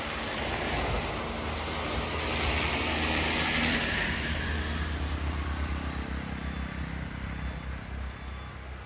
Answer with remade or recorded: recorded